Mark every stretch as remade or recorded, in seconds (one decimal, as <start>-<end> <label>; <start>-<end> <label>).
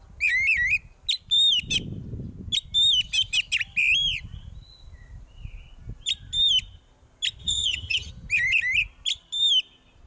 0.0-7.4 recorded; 7.4-8.1 remade; 8.1-10.1 recorded